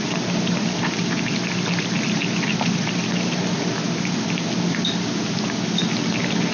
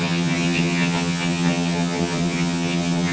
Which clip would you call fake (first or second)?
second